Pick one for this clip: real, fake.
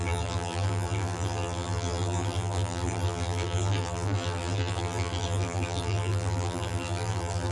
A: fake